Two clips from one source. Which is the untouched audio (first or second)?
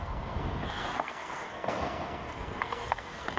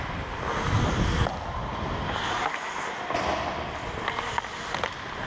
second